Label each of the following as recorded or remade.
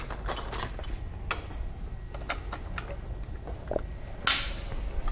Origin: recorded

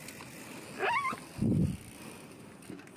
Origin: recorded